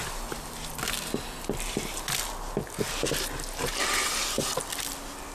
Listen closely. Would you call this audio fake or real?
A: real